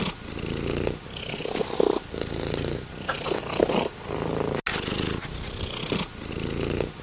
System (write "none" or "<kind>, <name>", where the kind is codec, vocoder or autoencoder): none